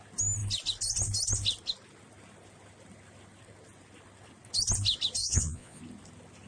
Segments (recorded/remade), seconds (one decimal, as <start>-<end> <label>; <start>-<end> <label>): 0.0-5.2 recorded; 5.2-5.8 remade; 5.8-6.5 recorded

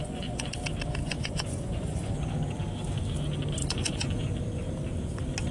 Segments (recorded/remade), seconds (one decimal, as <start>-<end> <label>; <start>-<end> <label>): 0.0-0.5 remade; 0.5-1.0 recorded; 1.0-2.1 remade; 2.1-3.6 recorded; 3.6-4.2 remade; 4.2-5.5 recorded

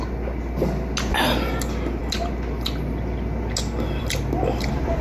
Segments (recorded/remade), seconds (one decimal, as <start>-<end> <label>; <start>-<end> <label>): 0.0-5.0 recorded

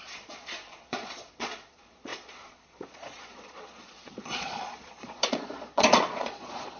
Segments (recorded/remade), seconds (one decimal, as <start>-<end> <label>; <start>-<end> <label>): 0.0-6.8 remade

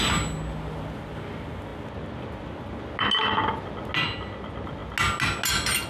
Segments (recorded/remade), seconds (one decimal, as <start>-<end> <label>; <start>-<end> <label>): 0.0-5.9 recorded

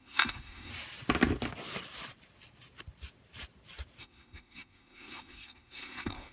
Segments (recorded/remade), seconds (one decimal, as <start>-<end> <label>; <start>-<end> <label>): 0.0-0.7 remade; 0.7-4.0 recorded; 4.0-6.3 remade

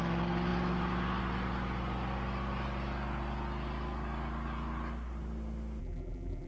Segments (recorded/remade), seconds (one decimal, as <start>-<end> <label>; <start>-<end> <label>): 0.0-5.8 recorded; 5.8-6.5 remade

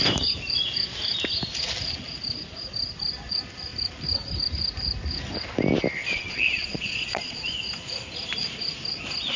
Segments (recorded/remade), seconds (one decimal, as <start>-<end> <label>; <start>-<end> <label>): 0.0-6.0 recorded; 6.0-7.5 remade; 7.5-9.4 recorded